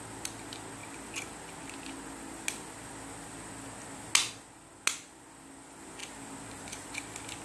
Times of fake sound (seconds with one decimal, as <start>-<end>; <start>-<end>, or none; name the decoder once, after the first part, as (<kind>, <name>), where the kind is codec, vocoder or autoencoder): none

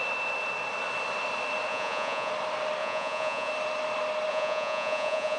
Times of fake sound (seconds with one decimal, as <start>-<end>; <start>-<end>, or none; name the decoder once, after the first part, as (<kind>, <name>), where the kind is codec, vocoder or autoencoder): 1.7-2.3 (vocoder, Vocos); 2.8-3.5; 4.3-5.4

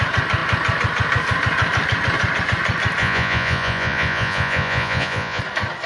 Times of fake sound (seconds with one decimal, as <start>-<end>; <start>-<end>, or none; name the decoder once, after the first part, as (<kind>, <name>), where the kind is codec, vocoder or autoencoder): 3.0-5.4 (vocoder, Vocos)

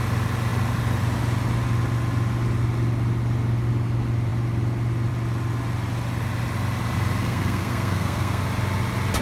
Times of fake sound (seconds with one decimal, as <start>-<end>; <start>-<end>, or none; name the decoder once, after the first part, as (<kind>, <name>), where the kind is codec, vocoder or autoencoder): 7.2-8.4 (codec, SNAC)

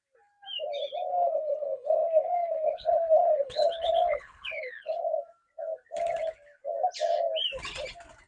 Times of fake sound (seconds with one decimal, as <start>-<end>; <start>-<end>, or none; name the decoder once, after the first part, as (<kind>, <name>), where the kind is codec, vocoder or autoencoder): 1.1-5.0 (codec, HILCodec)